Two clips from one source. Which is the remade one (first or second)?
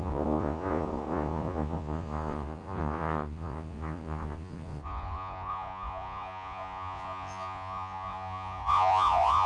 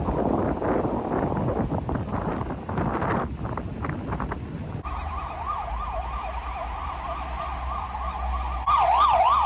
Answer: first